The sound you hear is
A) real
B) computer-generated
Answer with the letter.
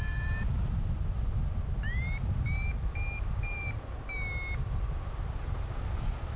A